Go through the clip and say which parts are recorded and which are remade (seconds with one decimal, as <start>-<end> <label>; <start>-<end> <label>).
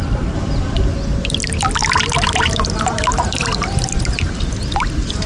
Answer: 0.0-1.8 recorded; 1.8-5.3 remade